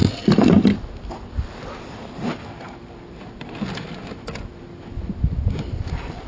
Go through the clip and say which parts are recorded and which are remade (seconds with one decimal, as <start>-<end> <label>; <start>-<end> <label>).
0.0-6.3 recorded